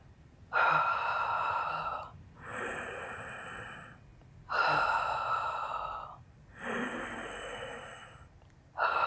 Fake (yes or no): no